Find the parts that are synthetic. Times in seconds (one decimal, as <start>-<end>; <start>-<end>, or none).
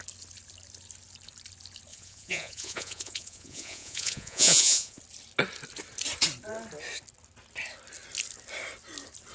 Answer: 1.9-5.0